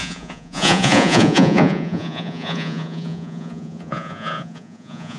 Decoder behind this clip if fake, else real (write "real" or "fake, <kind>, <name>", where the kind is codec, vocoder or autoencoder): fake, vocoder, Vocos